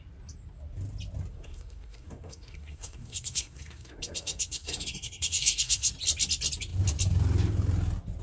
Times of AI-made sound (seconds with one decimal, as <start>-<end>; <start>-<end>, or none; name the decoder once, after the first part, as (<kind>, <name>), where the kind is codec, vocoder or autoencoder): 1.3-5.9 (codec, SNAC)